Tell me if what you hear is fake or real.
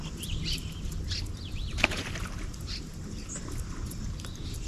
real